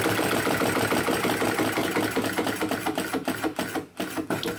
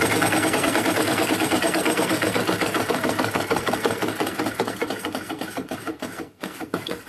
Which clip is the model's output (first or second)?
second